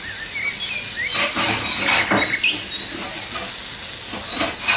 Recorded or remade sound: recorded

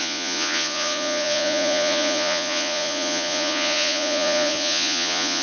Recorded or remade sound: remade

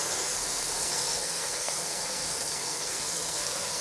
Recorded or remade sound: remade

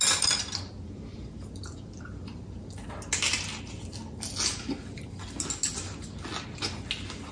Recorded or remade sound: recorded